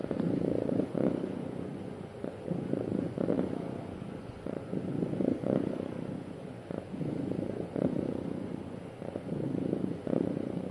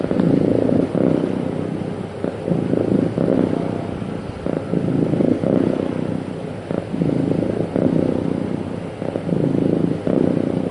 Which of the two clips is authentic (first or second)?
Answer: second